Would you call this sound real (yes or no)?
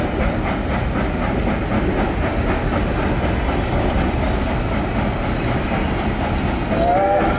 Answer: yes